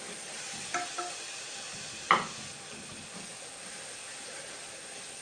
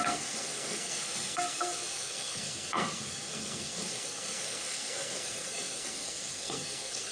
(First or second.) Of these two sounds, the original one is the first